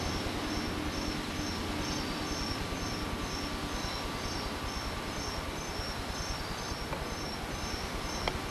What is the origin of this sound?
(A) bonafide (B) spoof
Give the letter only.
A